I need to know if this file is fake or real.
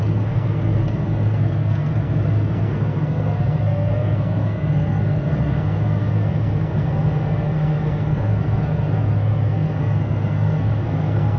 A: fake